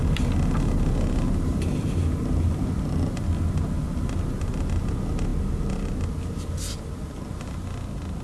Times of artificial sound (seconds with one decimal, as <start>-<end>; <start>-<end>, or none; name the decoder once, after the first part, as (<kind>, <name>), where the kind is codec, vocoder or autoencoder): none